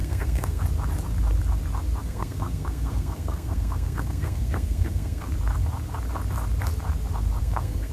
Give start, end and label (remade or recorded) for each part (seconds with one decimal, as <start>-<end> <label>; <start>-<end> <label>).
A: 0.0-0.6 remade; 0.6-2.0 recorded; 2.0-5.3 remade; 5.3-7.4 recorded; 7.4-7.9 remade